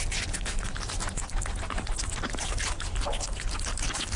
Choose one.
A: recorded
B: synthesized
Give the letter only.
A